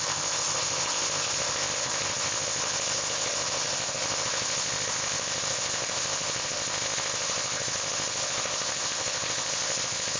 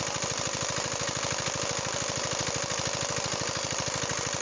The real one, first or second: second